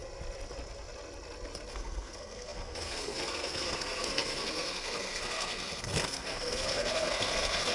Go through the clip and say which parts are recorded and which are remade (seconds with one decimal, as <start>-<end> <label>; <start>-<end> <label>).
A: 0.0-1.7 recorded; 1.7-7.7 remade